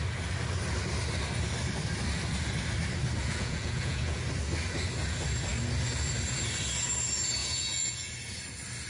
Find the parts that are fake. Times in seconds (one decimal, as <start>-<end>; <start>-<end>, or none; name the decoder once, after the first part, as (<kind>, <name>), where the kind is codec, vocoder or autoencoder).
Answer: 3.2-4.2 (vocoder, Vocos); 7.4-8.1

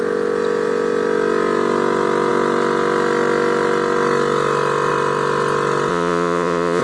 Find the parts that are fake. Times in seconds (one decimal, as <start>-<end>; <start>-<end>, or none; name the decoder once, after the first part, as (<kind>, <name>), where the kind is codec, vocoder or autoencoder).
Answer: 5.9-6.8 (vocoder, Vocos)

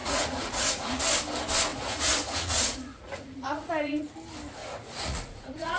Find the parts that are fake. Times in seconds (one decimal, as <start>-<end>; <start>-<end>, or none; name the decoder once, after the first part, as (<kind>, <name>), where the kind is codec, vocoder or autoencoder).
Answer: 0.0-1.0 (vocoder, Vocos); 1.7-4.0; 4.6-5.8

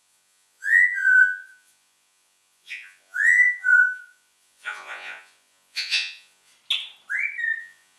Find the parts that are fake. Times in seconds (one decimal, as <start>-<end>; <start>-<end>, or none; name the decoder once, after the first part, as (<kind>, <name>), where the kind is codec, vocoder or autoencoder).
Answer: 0.0-6.5 (vocoder, Vocos); 7.6-8.0

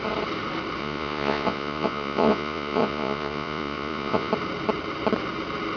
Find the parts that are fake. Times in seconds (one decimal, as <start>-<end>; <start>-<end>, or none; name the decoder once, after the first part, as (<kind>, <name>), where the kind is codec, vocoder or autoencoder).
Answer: 0.8-4.3 (vocoder, Vocos)

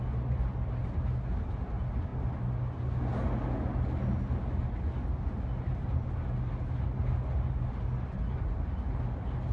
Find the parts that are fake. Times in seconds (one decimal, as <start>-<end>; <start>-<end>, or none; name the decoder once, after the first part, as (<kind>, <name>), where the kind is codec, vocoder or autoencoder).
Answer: none

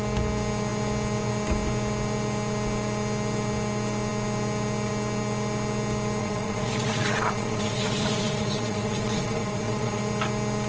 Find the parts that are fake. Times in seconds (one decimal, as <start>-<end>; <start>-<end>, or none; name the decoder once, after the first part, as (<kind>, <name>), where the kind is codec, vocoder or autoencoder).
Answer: 6.2-10.0 (vocoder, Vocos)

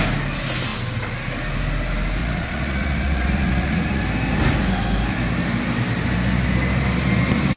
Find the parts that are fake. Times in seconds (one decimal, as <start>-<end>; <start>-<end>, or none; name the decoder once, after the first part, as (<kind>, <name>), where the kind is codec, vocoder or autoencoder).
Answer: 2.2-4.0 (vocoder, Vocos)